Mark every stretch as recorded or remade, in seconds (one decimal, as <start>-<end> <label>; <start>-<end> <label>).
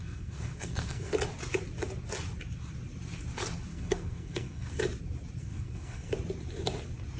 0.0-1.1 remade; 1.1-3.7 recorded; 3.7-4.8 remade; 4.8-5.4 recorded; 5.4-6.1 remade; 6.1-7.2 recorded